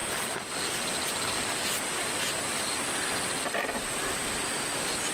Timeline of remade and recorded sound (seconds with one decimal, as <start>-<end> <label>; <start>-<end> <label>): 0.0-5.1 recorded